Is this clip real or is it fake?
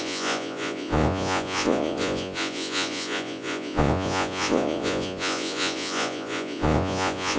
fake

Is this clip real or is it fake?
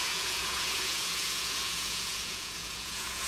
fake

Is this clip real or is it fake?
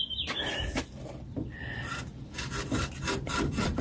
real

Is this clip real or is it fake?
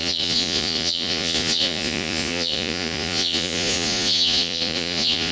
fake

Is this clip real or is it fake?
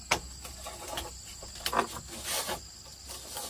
real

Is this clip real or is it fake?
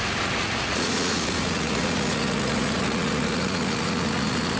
fake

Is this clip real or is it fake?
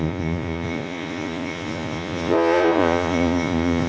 fake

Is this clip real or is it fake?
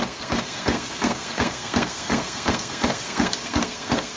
fake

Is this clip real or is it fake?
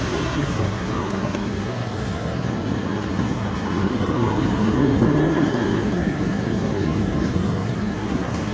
fake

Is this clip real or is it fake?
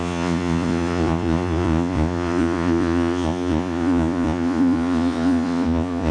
fake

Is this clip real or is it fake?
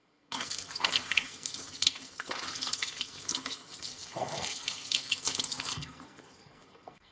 fake